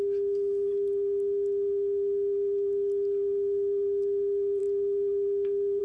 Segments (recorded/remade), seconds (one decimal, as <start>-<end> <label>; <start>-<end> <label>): 0.0-5.8 recorded